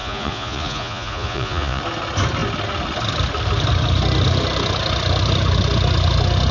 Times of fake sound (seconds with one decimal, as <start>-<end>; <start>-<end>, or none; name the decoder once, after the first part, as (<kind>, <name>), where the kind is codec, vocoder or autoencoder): 0.0-1.8 (vocoder, Vocos)